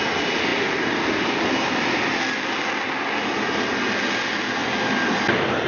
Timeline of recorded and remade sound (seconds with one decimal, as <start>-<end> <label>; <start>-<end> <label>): 0.0-5.7 recorded

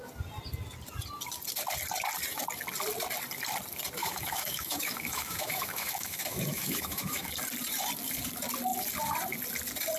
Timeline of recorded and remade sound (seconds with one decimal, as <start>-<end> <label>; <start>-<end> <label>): 0.0-4.0 recorded; 4.0-7.3 remade; 7.3-10.0 recorded

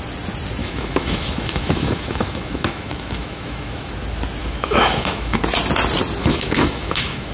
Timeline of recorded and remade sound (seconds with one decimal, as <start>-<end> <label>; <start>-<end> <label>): 0.0-0.6 recorded; 0.6-3.9 remade; 3.9-4.4 recorded; 4.4-5.4 remade; 5.4-6.2 recorded; 6.2-7.3 remade